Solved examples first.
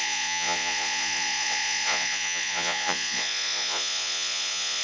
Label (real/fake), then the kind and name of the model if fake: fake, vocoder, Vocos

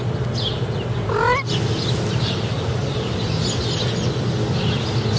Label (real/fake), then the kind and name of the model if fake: real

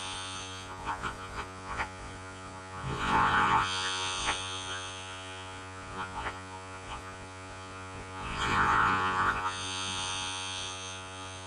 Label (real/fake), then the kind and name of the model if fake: fake, vocoder, Vocos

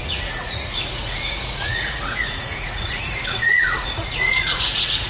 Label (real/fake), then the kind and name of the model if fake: fake, vocoder, Vocos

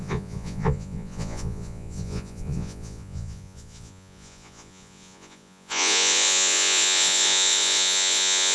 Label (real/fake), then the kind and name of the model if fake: fake, vocoder, Vocos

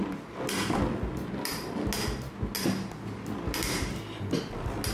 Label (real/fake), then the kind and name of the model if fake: real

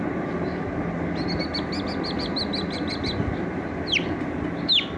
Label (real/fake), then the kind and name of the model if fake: real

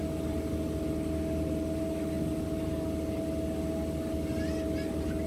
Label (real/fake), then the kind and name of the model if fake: real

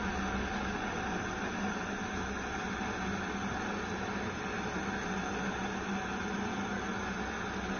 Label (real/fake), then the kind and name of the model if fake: real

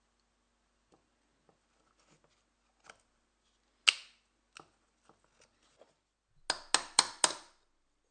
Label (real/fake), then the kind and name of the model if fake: real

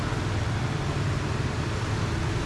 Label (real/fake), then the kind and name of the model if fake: real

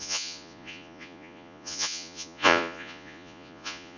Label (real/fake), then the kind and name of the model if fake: fake, vocoder, Vocos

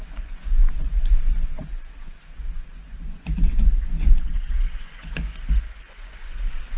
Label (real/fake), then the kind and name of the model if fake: fake, vocoder, Vocos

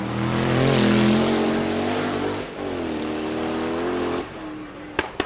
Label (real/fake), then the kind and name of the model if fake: real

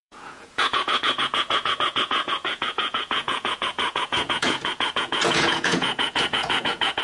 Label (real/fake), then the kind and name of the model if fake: fake, vocoder, Vocos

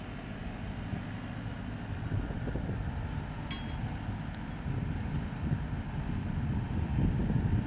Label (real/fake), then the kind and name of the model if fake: real